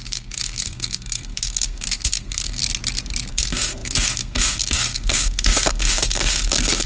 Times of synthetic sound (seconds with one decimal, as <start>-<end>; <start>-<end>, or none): 0.0-2.6; 3.3-6.9